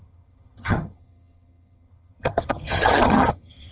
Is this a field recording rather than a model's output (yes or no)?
no